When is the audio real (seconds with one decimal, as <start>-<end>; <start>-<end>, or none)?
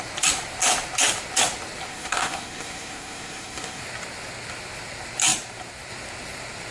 0.0-1.9; 3.8-6.7